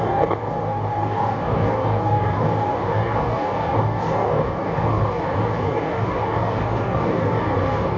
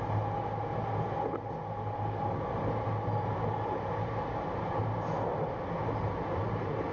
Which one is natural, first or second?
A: second